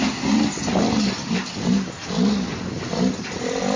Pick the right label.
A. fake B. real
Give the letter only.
B